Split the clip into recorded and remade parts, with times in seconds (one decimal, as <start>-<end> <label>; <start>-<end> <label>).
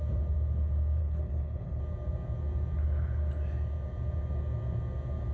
0.0-1.0 recorded; 1.0-1.8 remade; 1.8-5.3 recorded